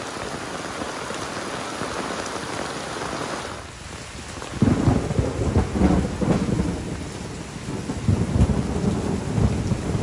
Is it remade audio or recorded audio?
recorded